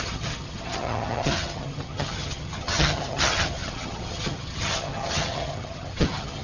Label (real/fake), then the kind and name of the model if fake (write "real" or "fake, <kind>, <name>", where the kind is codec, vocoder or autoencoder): fake, vocoder, HiFi-GAN